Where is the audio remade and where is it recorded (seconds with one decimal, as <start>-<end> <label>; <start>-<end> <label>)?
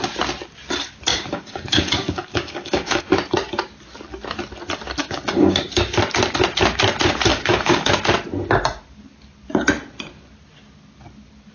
0.0-1.1 recorded; 1.1-3.0 remade; 3.0-5.0 recorded; 5.0-5.6 remade; 5.6-7.3 recorded; 7.3-7.9 remade; 7.9-11.5 recorded